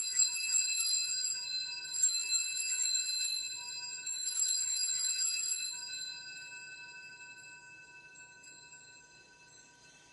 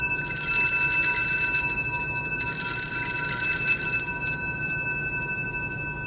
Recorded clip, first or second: second